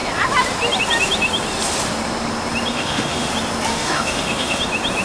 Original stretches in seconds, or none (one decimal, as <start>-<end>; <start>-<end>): 0.0-2.7; 3.3-3.7; 4.6-5.0